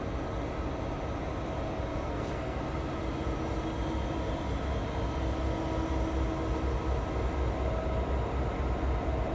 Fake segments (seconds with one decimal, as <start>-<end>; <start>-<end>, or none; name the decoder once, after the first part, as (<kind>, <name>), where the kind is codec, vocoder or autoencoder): 1.9-2.6 (codec, SNAC)